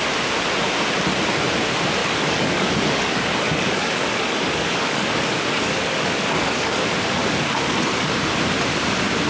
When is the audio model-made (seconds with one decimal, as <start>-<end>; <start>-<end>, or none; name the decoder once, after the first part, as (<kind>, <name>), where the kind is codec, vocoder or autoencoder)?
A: 2.0-6.8 (codec, DAC); 7.2-8.1